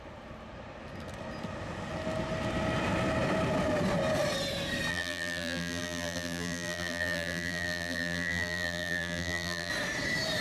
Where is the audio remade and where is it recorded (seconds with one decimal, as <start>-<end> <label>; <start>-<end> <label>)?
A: 0.0-4.9 recorded; 4.9-9.7 remade; 9.7-10.4 recorded